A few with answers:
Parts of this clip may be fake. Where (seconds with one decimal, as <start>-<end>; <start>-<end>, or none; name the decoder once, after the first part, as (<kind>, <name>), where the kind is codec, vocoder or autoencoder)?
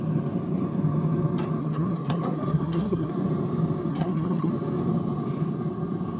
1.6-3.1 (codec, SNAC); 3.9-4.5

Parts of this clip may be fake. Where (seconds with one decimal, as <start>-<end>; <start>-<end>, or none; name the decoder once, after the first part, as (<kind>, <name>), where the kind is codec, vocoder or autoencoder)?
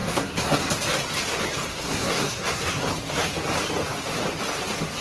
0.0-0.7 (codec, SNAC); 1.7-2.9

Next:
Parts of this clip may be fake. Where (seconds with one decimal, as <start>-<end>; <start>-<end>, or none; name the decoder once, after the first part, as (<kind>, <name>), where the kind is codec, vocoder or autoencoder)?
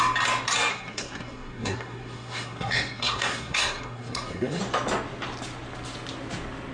0.7-4.6 (codec, SNAC)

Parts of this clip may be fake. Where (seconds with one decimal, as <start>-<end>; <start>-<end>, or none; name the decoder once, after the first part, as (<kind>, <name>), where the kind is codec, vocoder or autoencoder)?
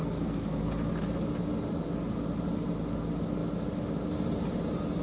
0.0-0.6 (codec, SNAC)